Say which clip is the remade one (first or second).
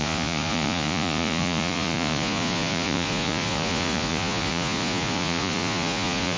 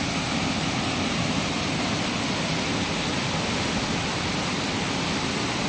first